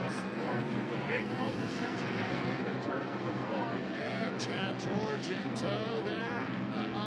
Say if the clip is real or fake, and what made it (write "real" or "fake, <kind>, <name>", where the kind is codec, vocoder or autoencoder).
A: fake, codec, SNAC